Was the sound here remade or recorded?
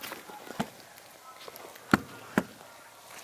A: recorded